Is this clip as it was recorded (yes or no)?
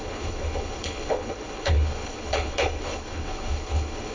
no